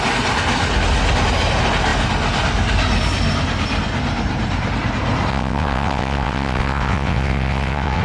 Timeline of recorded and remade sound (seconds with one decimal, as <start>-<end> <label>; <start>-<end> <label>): 0.0-5.3 recorded; 5.3-8.0 remade